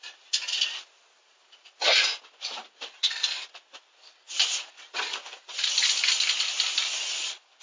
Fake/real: real